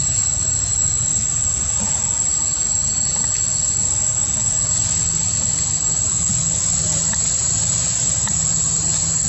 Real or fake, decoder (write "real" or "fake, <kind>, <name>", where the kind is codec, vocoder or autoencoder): real